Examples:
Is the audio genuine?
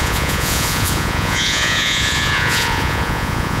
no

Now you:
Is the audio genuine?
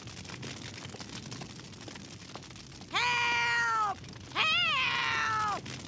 yes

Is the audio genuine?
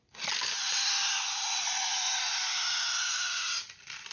yes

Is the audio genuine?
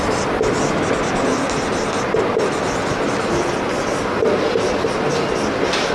yes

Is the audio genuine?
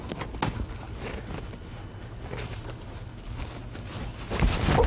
yes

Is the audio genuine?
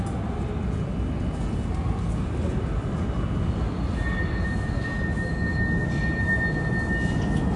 yes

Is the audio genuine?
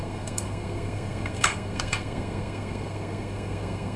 no